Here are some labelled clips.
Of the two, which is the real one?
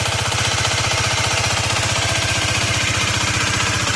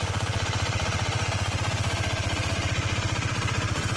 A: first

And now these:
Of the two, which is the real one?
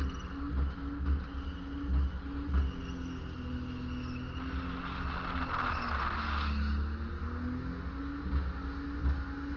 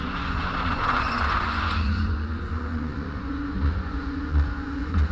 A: first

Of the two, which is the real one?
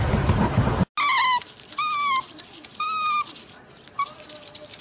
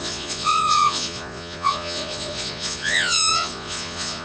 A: first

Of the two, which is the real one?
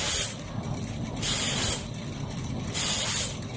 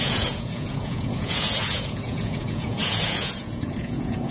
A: first